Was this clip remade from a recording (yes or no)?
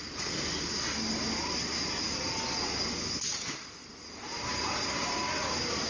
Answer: no